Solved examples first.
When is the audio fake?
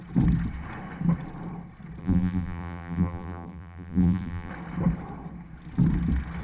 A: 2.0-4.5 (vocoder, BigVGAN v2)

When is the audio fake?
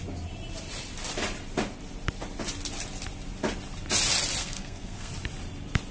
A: 4.4-5.1 (codec, SNAC)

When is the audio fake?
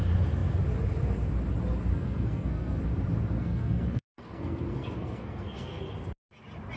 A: 1.9-2.8 (codec, SNAC); 3.4-5.8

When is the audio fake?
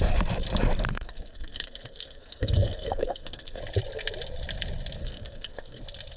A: 0.9-3.6 (codec, SNAC); 5.0-5.8